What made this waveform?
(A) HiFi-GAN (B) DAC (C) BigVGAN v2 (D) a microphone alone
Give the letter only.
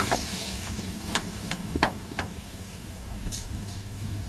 B